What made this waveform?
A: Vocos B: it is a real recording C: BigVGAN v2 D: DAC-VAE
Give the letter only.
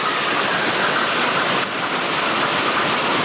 B